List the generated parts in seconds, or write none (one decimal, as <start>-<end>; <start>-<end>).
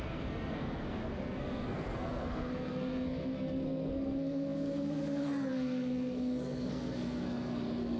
0.0-8.0